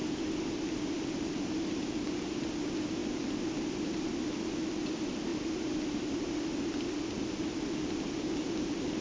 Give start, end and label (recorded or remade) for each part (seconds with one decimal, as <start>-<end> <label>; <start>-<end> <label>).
0.0-9.0 recorded